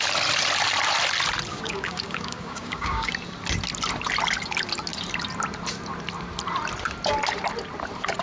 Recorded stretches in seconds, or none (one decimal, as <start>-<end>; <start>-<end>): 0.0-1.5; 3.1-8.2